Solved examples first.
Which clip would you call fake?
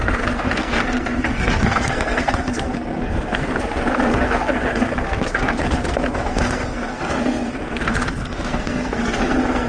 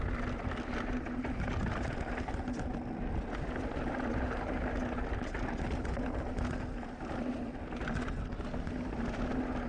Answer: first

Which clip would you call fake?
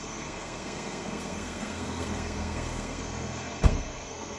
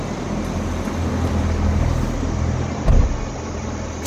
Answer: first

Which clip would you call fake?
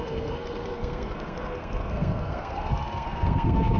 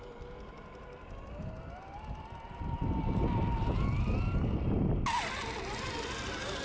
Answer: first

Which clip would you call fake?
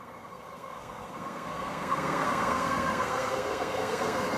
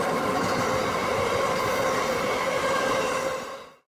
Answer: first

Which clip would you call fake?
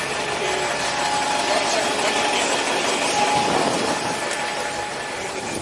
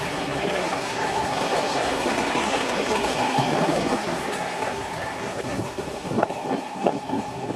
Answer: second